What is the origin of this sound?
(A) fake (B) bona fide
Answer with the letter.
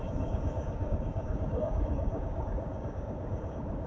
A